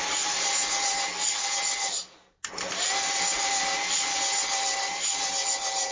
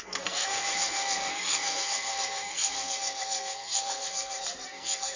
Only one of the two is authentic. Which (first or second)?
first